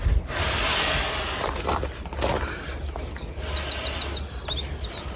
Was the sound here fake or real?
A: real